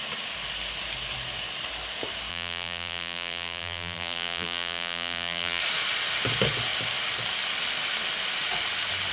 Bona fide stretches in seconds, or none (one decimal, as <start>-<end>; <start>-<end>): 0.0-2.3; 5.6-9.1